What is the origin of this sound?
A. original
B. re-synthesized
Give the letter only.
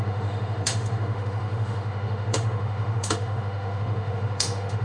B